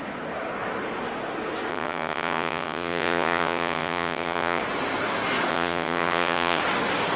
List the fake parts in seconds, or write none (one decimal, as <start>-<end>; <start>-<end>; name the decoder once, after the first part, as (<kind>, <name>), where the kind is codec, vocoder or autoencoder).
1.7-4.6 (vocoder, HiFi-GAN); 5.5-6.6